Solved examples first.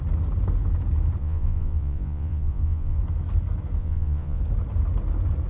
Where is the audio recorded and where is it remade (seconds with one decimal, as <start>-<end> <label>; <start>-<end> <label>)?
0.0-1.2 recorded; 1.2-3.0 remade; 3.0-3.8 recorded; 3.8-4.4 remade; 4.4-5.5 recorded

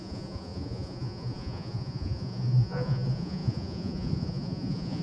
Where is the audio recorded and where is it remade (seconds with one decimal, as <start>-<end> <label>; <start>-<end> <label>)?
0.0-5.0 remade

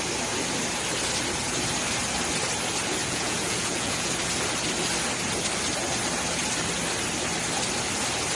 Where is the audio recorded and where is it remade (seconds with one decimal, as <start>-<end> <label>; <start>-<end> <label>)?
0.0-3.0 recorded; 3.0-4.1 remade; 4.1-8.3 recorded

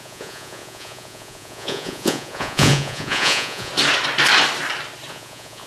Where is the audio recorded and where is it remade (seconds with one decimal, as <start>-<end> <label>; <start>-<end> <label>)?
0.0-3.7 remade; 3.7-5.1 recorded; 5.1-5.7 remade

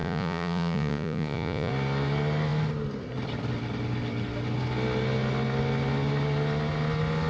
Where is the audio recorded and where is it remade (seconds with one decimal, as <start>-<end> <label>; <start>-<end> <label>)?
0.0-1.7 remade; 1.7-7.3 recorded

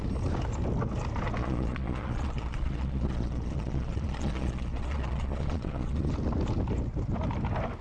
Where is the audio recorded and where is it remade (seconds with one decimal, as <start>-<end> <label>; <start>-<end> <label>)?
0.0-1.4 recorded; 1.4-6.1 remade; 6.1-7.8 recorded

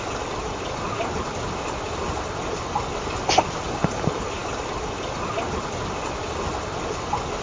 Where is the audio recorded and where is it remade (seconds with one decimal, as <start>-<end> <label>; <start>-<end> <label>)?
0.0-7.4 recorded

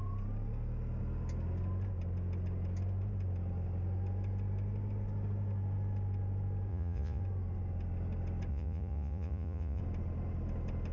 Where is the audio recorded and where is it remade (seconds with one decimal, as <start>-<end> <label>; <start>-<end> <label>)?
0.0-6.7 recorded; 6.7-7.2 remade; 7.2-8.5 recorded; 8.5-9.8 remade; 9.8-10.9 recorded